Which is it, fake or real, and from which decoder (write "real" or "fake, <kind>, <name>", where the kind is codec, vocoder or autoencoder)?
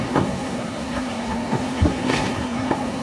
fake, codec, SNAC